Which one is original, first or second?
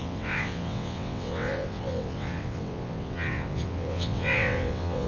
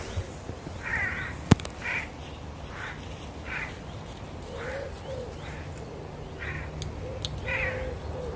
second